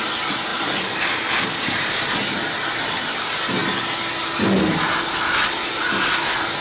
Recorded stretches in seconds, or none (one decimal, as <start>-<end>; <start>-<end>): 0.0-0.5; 1.9-6.6